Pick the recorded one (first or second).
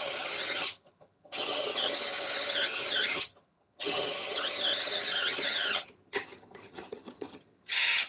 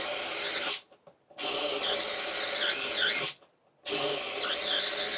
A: second